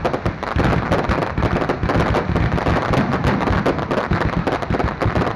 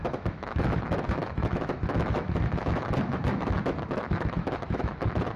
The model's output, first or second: second